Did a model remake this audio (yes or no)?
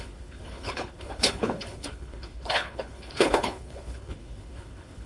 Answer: yes